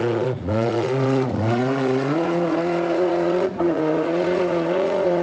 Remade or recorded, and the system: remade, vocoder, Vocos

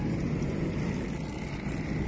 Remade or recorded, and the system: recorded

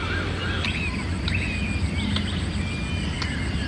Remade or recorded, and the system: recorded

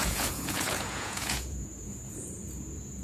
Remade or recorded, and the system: remade, vocoder, Vocos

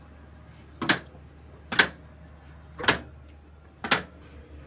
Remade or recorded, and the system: recorded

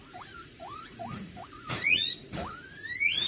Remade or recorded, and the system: remade, vocoder, Vocos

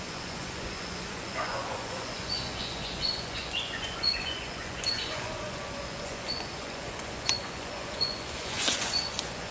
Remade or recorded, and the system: remade, vocoder, Vocos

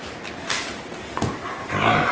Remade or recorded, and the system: recorded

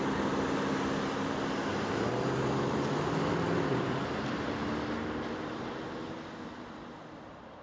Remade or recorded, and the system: recorded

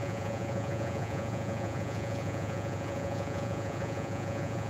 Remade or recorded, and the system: remade, vocoder, Vocos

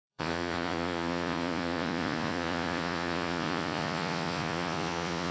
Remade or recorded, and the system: remade, vocoder, Vocos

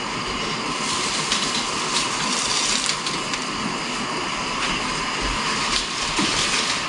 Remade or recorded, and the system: recorded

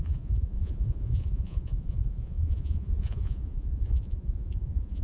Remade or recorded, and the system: remade, vocoder, Vocos